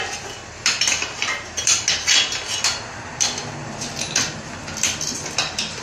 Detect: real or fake real